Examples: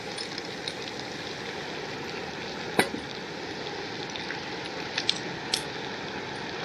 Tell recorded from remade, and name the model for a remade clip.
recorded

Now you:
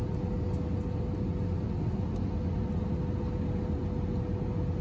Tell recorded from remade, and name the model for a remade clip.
recorded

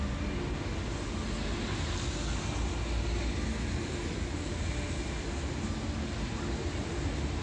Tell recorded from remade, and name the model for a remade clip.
recorded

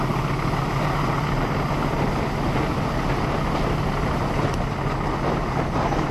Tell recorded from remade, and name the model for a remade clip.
recorded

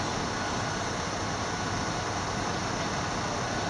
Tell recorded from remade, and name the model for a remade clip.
recorded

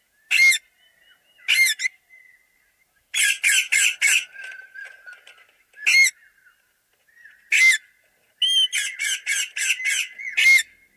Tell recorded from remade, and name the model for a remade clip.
recorded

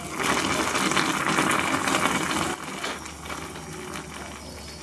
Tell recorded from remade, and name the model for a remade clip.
recorded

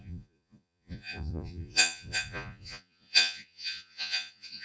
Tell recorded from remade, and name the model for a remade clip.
remade, vocoder, Vocos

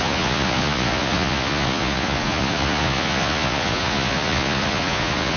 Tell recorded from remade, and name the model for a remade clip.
remade, vocoder, Vocos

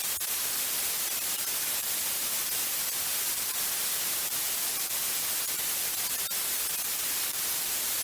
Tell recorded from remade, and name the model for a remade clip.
remade, vocoder, BigVGAN v2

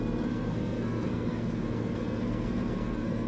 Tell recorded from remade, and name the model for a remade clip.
remade, codec, SNAC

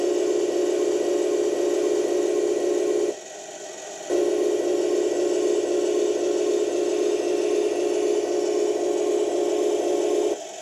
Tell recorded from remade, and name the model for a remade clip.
recorded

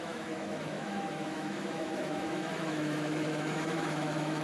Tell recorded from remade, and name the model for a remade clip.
remade, autoencoder, DAC-VAE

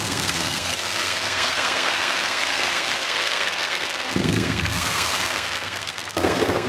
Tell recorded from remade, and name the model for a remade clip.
remade, codec, SNAC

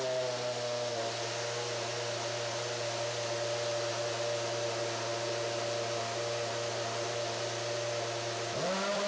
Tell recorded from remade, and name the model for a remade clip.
recorded